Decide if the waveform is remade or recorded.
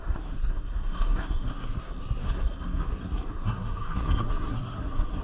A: remade